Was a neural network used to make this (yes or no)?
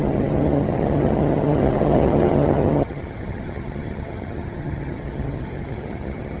yes